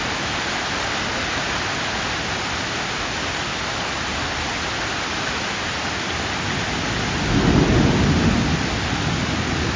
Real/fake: real